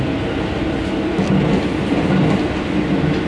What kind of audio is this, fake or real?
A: real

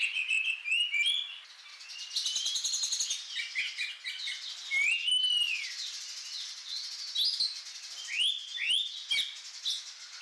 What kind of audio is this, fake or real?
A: real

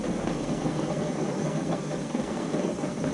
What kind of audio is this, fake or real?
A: fake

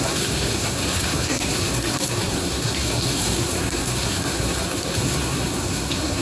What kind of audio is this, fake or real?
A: fake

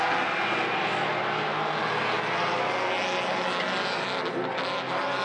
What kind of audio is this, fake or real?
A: real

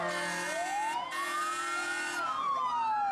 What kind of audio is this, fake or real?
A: real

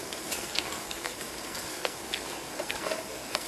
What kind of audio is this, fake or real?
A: fake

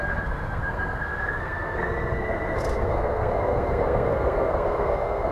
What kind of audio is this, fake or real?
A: fake